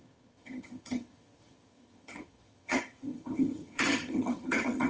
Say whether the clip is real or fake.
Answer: fake